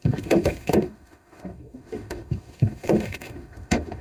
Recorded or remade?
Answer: remade